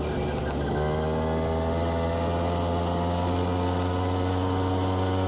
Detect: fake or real real